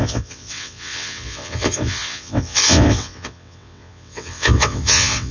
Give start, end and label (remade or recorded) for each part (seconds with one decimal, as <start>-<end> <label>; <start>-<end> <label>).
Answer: 0.0-5.3 remade